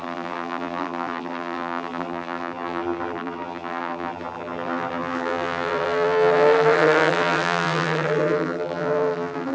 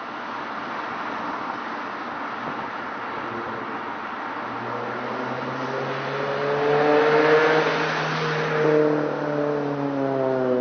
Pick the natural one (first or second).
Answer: second